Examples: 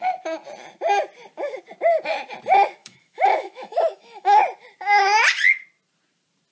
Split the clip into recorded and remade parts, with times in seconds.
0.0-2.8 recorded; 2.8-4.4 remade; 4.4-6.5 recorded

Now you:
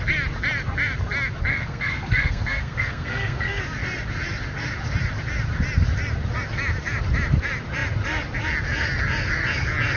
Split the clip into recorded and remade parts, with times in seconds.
0.0-1.5 recorded; 1.5-3.6 remade; 3.6-10.0 recorded

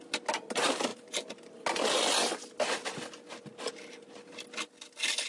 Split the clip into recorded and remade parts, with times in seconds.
0.0-0.9 recorded; 0.9-1.5 remade; 1.5-5.3 recorded

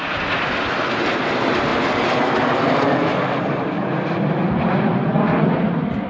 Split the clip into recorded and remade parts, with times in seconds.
0.0-6.1 recorded

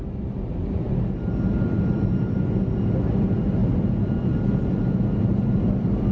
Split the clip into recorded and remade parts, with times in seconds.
0.0-6.1 recorded

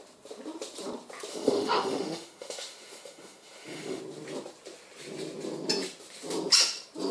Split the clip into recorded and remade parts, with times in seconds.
0.0-1.3 recorded; 1.3-4.0 remade; 4.0-7.1 recorded

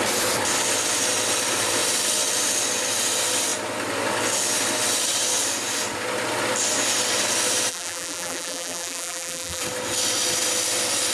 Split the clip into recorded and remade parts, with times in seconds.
0.0-7.7 recorded; 7.7-9.6 remade; 9.6-11.1 recorded